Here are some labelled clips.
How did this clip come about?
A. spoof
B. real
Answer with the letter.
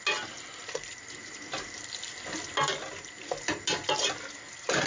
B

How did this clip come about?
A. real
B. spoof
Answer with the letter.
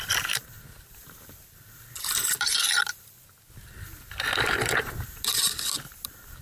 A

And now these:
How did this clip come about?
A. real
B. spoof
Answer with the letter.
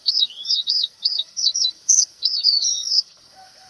B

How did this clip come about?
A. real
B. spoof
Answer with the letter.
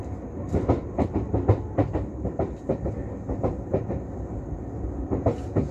A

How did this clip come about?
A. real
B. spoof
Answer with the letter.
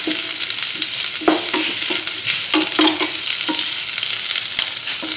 A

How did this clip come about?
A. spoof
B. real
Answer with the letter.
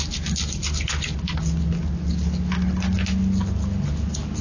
B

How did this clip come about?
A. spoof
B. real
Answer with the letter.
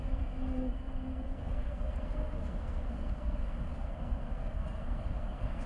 A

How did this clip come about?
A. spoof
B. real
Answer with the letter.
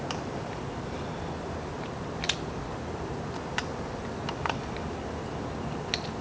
B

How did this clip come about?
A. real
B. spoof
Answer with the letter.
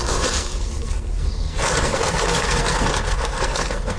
B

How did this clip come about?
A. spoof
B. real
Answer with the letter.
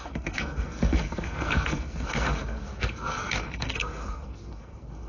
A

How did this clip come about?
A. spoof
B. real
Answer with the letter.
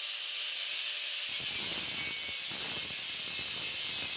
B